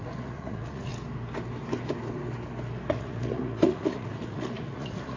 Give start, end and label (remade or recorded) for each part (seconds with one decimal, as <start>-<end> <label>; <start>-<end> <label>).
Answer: 0.0-0.9 remade; 0.9-2.9 recorded; 2.9-5.2 remade